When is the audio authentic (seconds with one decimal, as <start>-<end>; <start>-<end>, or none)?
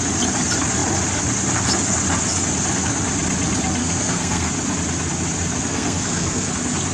0.0-3.8; 4.5-5.6; 6.5-6.9